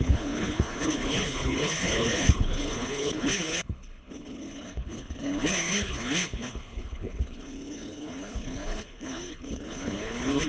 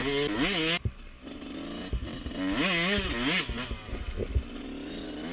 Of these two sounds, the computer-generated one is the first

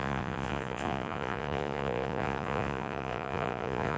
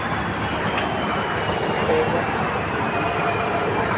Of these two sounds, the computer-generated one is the first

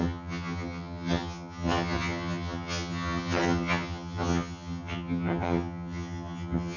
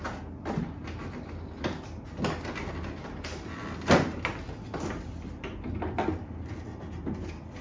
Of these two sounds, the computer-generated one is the first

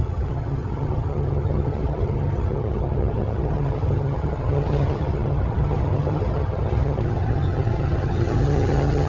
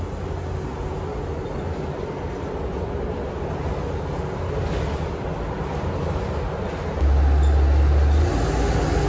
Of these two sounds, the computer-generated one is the first